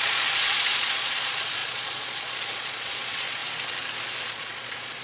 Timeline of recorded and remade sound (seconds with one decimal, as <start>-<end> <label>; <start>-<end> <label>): 0.0-3.4 remade; 3.4-4.3 recorded; 4.3-5.0 remade